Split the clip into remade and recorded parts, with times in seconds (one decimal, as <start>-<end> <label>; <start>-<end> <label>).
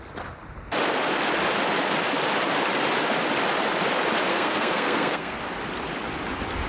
0.0-4.3 recorded; 4.3-5.4 remade; 5.4-6.7 recorded